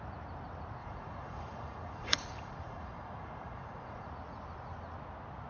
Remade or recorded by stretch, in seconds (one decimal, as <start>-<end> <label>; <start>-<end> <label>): 0.0-0.8 recorded; 0.8-4.1 remade; 4.1-5.5 recorded